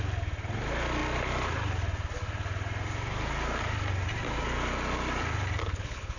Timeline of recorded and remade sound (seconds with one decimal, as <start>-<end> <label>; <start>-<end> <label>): 0.0-5.6 recorded; 5.6-6.2 remade